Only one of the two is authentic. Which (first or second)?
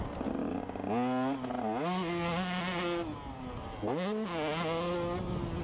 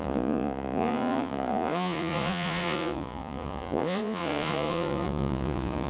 first